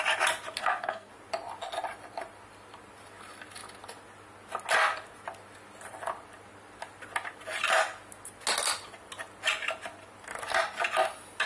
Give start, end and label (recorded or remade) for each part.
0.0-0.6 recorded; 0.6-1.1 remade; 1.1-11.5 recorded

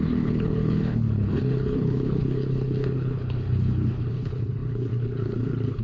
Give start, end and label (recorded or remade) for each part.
0.0-5.8 remade

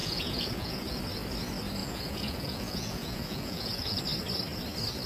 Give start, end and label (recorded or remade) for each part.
0.0-1.0 remade; 1.0-1.8 recorded; 1.8-4.0 remade; 4.0-5.1 recorded

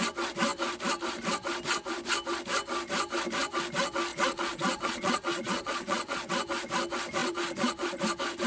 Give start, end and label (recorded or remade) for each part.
0.0-4.1 recorded; 4.1-6.3 remade; 6.3-7.2 recorded; 7.2-8.0 remade; 8.0-8.5 recorded

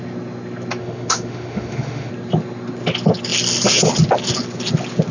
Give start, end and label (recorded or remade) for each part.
0.0-0.8 recorded; 0.8-2.1 remade; 2.1-5.1 recorded

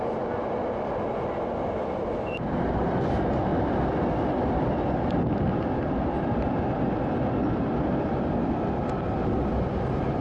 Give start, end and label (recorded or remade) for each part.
0.0-10.2 recorded